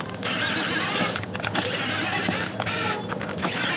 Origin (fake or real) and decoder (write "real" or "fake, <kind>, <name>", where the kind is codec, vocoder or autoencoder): real